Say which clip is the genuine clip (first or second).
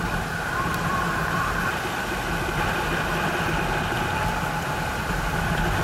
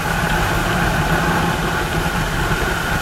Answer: second